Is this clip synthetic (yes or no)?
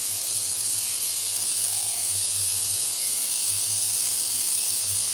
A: yes